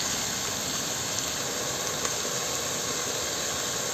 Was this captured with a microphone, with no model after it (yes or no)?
yes